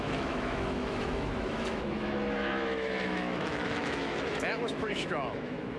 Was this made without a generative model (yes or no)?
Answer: no